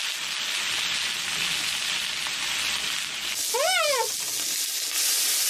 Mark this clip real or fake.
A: real